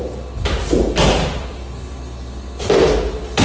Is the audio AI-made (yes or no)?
no